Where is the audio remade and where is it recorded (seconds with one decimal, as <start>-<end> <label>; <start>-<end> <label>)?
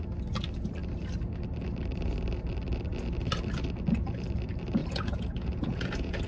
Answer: 0.0-4.8 recorded; 4.8-6.3 remade